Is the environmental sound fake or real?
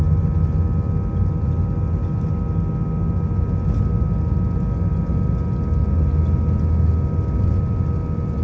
real